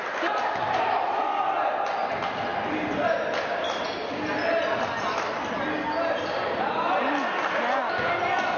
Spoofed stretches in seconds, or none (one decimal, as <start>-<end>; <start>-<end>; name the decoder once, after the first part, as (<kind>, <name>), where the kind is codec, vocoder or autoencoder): none